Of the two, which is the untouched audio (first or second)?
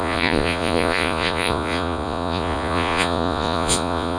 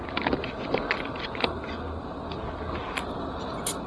second